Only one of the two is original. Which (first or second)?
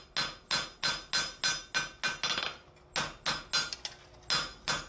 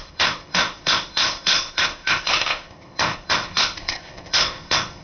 first